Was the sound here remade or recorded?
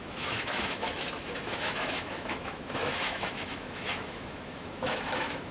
remade